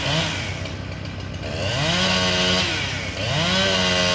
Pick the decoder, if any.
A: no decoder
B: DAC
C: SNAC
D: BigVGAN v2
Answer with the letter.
A